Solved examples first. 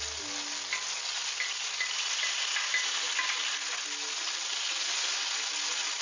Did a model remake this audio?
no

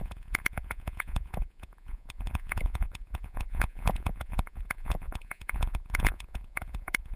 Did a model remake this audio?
yes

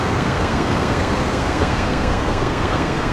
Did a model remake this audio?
yes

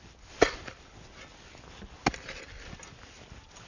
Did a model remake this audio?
no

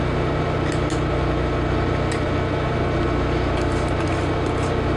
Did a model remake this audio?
no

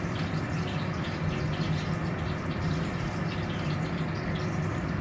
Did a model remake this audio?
no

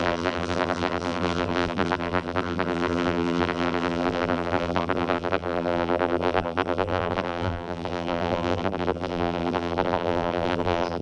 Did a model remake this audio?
yes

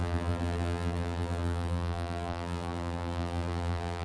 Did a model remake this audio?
yes